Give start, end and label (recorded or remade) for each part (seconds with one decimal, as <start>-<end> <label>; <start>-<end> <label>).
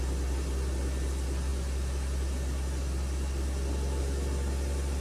0.0-5.0 recorded